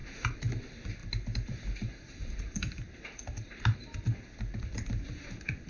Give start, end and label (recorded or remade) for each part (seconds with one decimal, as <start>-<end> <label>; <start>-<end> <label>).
0.0-0.5 remade; 0.5-1.0 recorded; 1.0-4.0 remade; 4.0-5.7 recorded